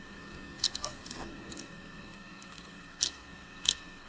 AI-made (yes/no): yes